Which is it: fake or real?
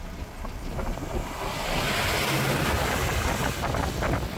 real